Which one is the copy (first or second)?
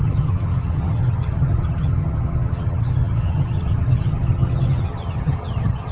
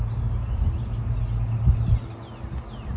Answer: first